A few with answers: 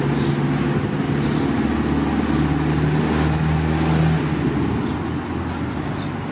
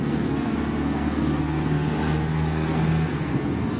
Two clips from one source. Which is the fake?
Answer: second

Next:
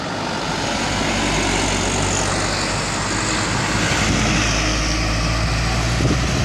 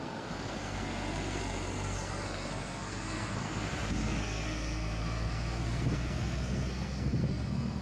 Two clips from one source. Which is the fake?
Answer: second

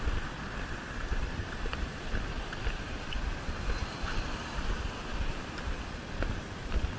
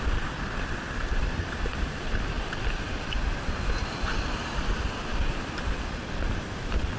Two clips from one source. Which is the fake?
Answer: first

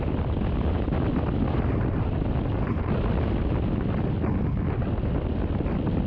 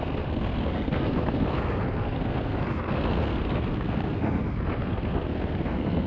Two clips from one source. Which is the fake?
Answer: second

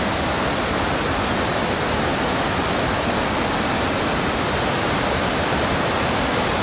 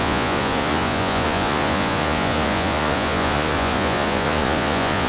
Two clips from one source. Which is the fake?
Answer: second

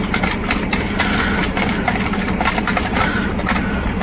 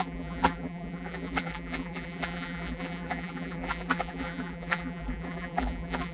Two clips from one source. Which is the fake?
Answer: second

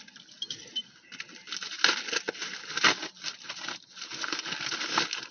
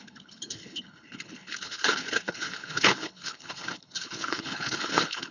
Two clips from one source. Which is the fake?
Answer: second